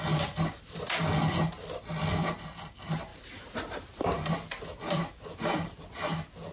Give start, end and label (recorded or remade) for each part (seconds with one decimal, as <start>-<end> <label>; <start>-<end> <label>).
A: 0.0-3.1 recorded; 3.1-5.8 remade; 5.8-6.5 recorded

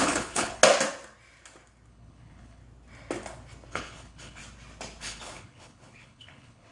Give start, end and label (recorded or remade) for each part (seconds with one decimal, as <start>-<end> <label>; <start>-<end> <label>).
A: 0.0-0.6 remade; 0.6-1.9 recorded; 1.9-2.6 remade; 2.6-3.7 recorded; 3.7-4.4 remade; 4.4-5.0 recorded; 5.0-6.7 remade